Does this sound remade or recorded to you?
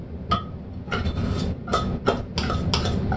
recorded